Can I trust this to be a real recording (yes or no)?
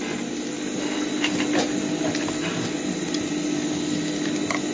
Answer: yes